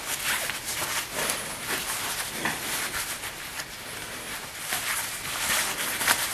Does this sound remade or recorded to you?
recorded